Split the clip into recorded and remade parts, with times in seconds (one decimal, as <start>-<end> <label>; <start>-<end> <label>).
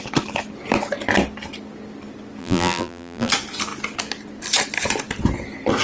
0.0-2.4 recorded; 2.4-3.3 remade; 3.3-5.8 recorded